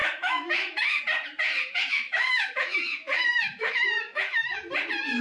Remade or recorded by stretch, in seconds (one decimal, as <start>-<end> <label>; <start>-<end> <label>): 0.0-1.0 remade; 1.0-1.6 recorded; 1.6-4.6 remade; 4.6-5.2 recorded